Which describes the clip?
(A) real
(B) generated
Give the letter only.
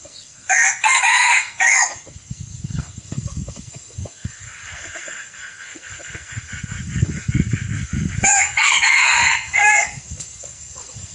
B